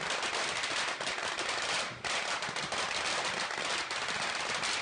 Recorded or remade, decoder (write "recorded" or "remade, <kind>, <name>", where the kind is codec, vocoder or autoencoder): recorded